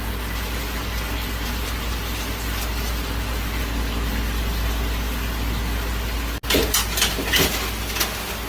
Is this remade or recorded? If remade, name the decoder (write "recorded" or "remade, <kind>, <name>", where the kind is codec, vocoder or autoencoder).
recorded